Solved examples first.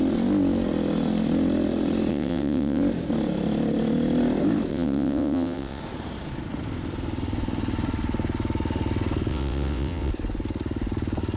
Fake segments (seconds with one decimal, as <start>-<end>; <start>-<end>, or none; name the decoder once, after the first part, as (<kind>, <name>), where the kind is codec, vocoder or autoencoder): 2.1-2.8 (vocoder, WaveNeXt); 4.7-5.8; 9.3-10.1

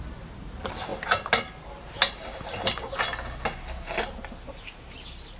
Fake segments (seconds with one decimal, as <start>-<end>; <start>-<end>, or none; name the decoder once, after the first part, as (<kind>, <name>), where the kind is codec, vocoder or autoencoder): none

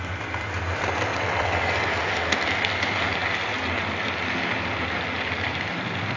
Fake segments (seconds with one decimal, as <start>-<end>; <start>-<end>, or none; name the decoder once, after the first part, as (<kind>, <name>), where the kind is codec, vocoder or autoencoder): 1.1-1.7 (vocoder, WaveNeXt)